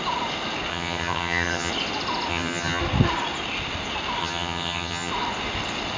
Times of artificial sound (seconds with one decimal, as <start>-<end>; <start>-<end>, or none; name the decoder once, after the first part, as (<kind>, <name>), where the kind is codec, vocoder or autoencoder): 0.7-1.7 (vocoder, HiFi-GAN); 2.3-2.8; 4.2-5.1